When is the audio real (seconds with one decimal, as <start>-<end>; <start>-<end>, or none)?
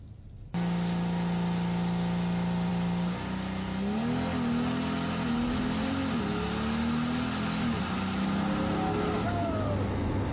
0.0-10.3